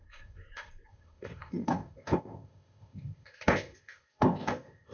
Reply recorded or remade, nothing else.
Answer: remade